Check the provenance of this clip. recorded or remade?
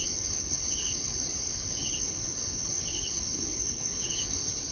remade